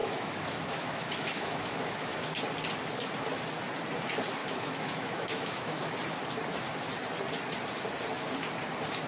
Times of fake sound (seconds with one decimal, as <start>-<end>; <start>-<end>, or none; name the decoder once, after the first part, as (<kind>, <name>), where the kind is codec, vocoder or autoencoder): 0.0-2.4 (autoencoder, DAC-VAE); 4.4-5.8